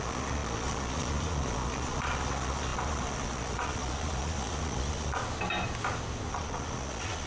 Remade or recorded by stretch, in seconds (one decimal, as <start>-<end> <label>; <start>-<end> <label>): 0.0-5.2 remade; 5.2-6.3 recorded; 6.3-7.3 remade